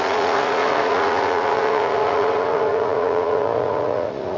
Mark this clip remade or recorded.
remade